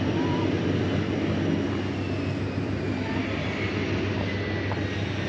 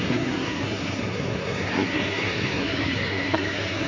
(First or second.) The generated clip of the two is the second